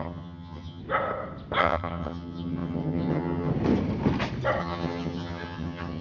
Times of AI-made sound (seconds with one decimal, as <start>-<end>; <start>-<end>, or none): 0.0-0.8; 1.6-3.5; 4.6-6.0